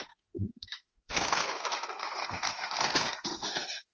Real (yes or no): no